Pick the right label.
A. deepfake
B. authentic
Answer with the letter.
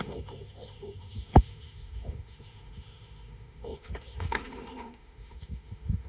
A